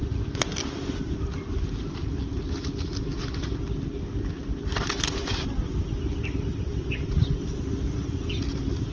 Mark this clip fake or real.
real